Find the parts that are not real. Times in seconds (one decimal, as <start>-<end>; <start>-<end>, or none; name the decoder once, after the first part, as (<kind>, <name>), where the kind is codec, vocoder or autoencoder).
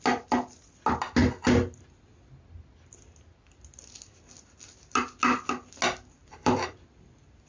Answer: 1.2-2.0 (vocoder, BigVGAN v2); 6.2-6.8